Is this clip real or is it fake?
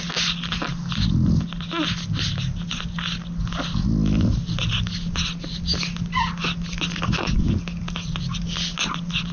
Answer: real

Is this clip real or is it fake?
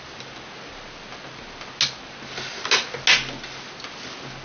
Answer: real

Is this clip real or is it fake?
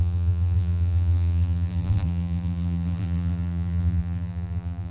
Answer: fake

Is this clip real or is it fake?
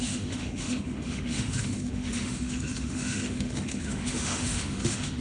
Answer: fake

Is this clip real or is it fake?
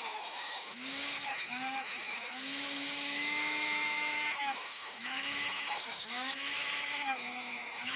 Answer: fake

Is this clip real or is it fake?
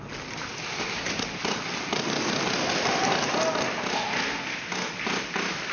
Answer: real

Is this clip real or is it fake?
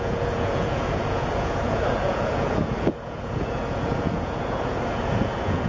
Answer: fake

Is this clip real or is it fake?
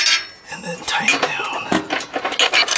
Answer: real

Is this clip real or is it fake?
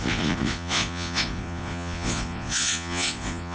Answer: fake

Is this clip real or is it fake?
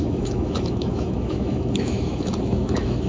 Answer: fake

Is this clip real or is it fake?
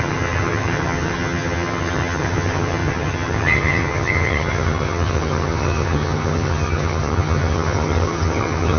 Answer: fake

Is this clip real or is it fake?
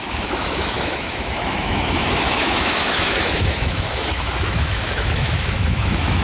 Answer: fake